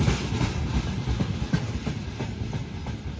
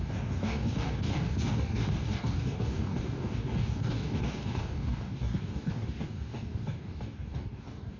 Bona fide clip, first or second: first